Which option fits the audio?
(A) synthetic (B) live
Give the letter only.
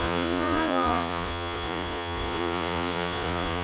A